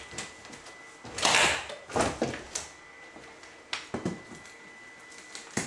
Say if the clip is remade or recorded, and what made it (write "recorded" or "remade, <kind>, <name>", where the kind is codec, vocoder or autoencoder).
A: recorded